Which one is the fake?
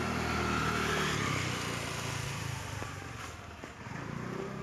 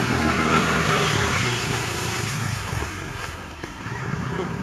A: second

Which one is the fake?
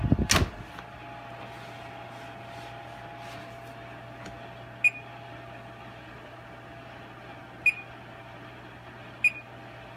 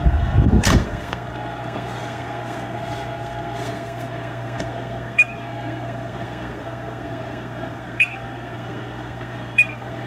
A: second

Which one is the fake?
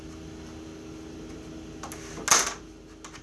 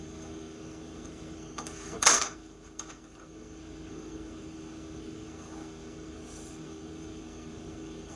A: second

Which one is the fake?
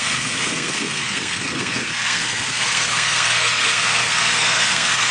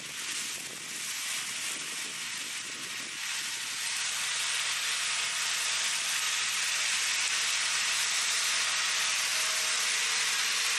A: first